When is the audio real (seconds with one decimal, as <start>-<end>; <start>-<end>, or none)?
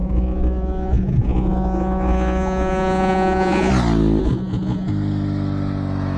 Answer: 3.7-4.2; 4.9-6.2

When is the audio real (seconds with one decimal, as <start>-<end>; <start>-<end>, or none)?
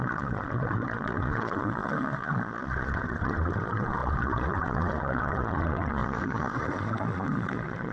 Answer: none